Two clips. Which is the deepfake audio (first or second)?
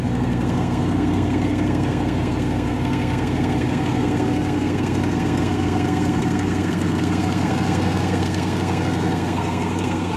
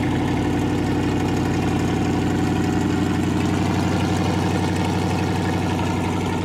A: first